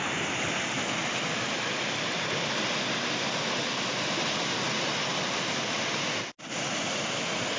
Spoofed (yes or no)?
no